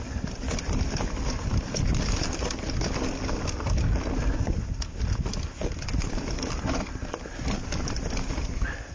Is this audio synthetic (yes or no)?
no